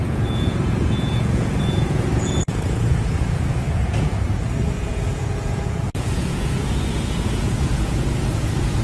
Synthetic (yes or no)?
yes